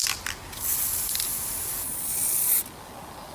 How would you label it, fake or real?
real